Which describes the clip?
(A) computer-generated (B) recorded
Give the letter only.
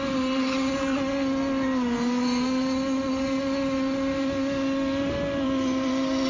B